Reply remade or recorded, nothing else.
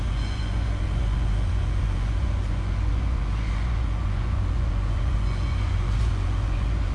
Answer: remade